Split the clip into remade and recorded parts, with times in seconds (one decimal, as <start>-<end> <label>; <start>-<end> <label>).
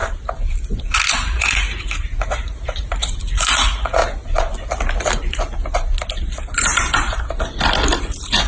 0.0-0.8 recorded; 0.8-4.0 remade; 4.0-8.0 recorded; 8.0-8.5 remade